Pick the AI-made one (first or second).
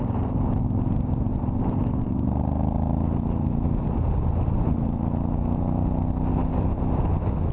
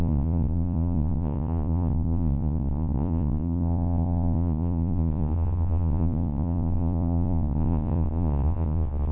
second